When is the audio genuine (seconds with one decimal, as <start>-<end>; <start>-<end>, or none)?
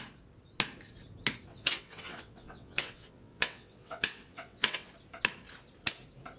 0.0-1.5; 4.9-6.4